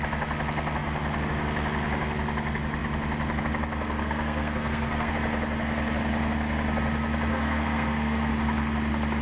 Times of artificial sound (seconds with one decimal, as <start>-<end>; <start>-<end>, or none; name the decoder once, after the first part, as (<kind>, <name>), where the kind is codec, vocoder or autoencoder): 4.0-5.1 (codec, SNAC); 7.3-8.3